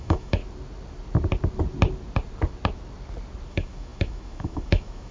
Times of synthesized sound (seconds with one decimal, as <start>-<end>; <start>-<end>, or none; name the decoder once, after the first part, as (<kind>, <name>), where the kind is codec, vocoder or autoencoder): 0.0-0.4 (autoencoder, DAC-VAE); 3.5-5.1